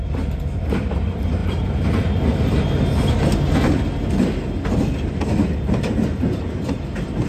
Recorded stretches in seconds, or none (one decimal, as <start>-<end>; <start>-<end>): 0.0-7.3